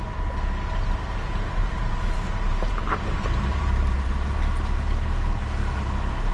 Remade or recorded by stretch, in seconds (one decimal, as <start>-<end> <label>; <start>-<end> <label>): 0.0-1.6 recorded; 1.6-4.1 remade; 4.1-6.3 recorded